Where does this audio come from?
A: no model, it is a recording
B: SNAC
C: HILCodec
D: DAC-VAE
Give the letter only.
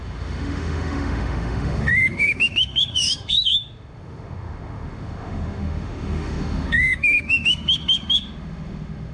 D